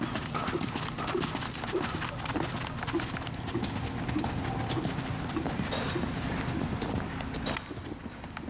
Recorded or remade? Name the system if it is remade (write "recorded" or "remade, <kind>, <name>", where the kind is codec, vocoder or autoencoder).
recorded